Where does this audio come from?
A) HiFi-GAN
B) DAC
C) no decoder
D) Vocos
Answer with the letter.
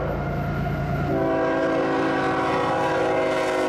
C